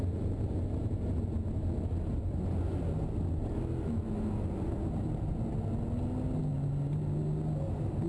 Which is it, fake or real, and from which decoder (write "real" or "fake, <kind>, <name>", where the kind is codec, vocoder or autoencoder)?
real